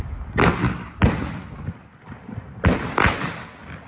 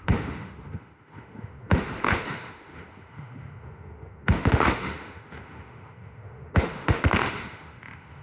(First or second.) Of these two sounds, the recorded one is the first